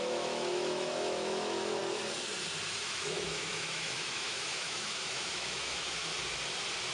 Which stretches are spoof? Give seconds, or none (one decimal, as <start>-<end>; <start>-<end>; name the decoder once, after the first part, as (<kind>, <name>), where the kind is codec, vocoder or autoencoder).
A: 0.0-1.8 (autoencoder, DAC-VAE); 2.8-6.1